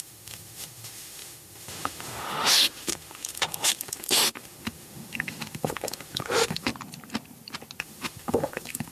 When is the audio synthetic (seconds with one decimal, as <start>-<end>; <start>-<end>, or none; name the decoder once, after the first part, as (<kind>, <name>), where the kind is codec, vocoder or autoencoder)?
0.0-6.7 (autoencoder, DAC-VAE); 7.8-8.9

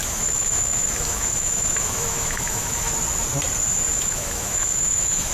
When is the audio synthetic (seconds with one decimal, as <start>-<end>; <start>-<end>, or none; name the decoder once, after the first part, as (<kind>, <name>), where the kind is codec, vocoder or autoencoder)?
0.0-2.9 (autoencoder, DAC-VAE); 3.9-5.3